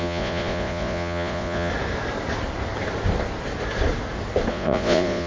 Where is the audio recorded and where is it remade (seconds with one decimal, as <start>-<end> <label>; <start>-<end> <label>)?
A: 0.0-1.7 remade; 1.7-4.5 recorded; 4.5-5.3 remade